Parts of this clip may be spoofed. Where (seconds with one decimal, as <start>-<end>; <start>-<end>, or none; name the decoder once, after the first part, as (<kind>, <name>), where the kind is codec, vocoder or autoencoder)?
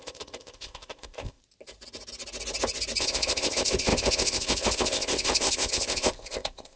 0.0-1.4 (codec, ZipCodec); 3.0-6.8